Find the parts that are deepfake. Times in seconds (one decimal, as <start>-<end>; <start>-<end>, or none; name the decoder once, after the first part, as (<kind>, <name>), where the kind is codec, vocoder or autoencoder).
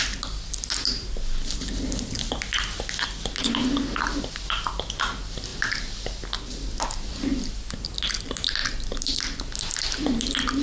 8.6-9.4 (vocoder, BigVGAN v2)